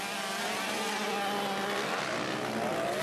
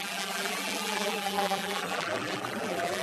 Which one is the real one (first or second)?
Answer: first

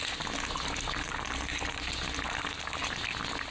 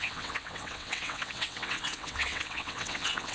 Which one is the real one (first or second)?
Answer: first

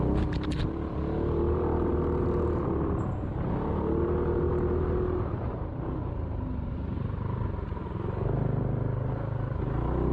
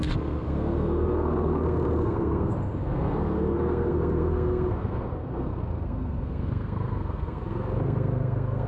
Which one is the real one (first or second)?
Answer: first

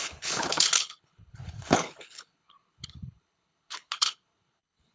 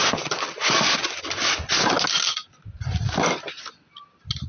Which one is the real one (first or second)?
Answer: second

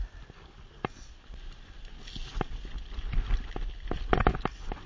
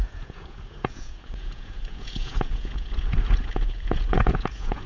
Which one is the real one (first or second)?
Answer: first